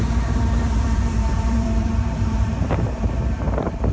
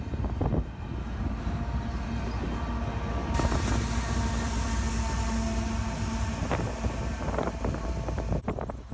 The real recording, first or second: second